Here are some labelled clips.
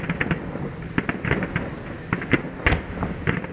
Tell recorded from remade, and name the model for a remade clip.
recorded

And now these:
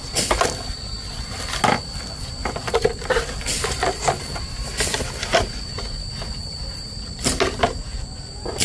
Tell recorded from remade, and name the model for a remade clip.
recorded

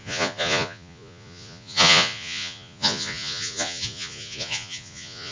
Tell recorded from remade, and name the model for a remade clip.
remade, vocoder, Vocos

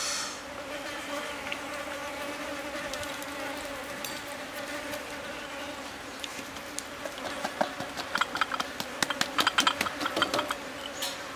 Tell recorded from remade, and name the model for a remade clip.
recorded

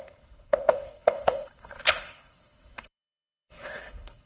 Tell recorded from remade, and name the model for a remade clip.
remade, codec, HILCodec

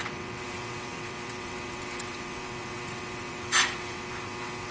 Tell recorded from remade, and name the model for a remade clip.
remade, vocoder, WaveNeXt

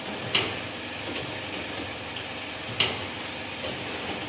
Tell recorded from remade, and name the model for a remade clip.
recorded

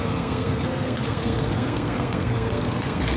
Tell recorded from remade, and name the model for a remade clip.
remade, codec, SNAC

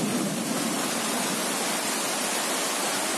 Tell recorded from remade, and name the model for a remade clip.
recorded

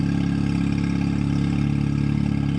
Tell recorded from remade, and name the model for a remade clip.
recorded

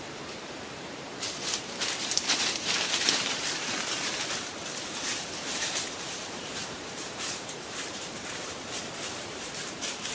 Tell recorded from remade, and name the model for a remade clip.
remade, vocoder, BigVGAN v2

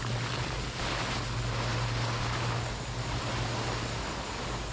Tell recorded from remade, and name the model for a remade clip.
recorded